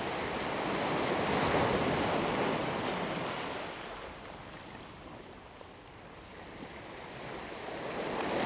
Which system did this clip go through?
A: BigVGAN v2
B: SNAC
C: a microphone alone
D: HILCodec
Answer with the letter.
C